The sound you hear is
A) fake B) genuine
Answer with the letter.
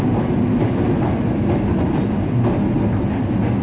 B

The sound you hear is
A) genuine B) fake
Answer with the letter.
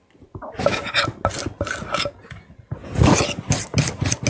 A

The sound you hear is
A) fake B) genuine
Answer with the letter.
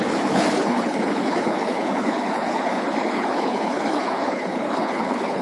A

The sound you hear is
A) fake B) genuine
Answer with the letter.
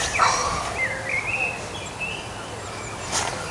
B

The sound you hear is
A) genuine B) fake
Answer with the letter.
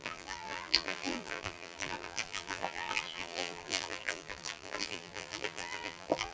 B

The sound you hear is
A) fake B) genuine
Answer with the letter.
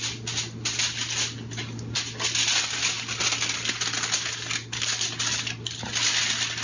B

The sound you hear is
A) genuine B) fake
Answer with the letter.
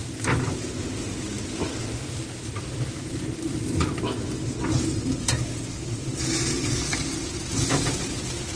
A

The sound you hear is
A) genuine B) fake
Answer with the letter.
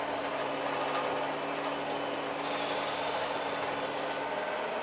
A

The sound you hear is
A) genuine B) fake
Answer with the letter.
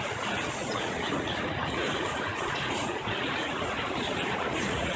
B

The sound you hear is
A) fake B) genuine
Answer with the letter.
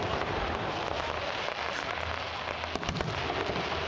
B